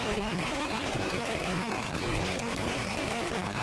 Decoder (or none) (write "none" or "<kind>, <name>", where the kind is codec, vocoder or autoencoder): codec, SNAC